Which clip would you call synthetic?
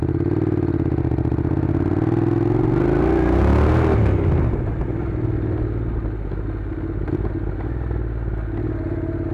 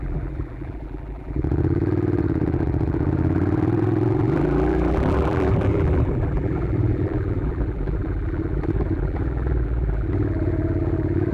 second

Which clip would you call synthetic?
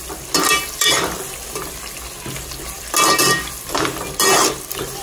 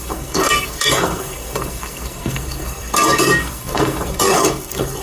second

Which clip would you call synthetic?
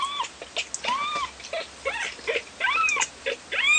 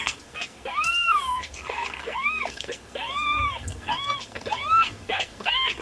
second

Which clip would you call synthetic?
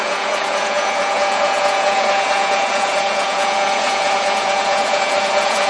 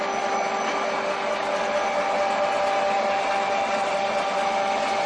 first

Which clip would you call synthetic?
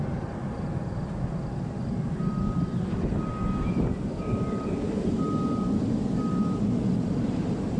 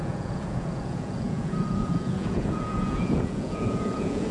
second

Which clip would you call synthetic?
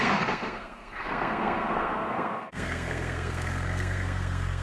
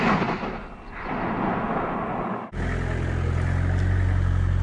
first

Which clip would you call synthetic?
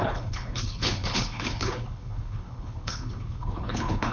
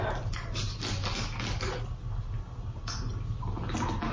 first